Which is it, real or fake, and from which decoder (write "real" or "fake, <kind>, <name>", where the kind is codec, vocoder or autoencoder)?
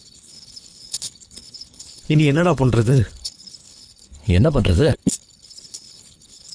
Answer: fake, codec, HILCodec